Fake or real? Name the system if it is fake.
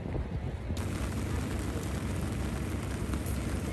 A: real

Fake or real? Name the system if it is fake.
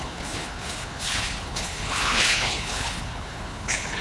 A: fake, codec, HILCodec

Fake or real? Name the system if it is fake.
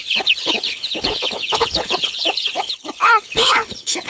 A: fake, codec, HILCodec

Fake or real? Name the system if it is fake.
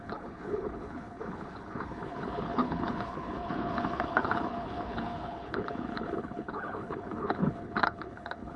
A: fake, codec, HILCodec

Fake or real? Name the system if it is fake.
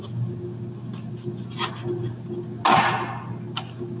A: real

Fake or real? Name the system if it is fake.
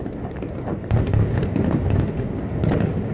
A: real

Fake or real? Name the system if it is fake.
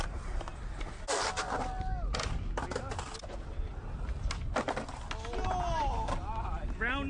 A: real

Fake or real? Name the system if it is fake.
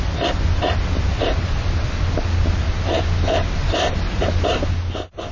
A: real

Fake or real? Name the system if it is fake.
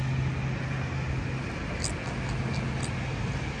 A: real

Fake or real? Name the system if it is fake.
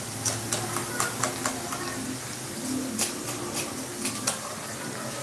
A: real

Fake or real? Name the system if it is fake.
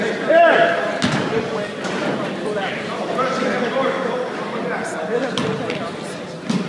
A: real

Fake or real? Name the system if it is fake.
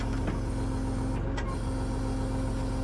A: real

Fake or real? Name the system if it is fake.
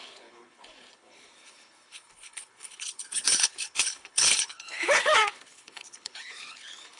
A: fake, codec, HILCodec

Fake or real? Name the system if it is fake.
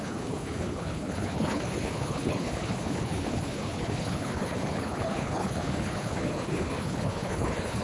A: fake, codec, HILCodec